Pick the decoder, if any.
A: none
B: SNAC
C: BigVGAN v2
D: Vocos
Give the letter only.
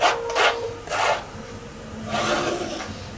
A